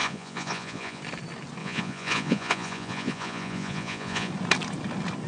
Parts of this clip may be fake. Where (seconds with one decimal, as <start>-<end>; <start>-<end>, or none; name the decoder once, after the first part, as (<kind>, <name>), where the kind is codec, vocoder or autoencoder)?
0.0-1.0 (vocoder, Vocos); 1.6-4.3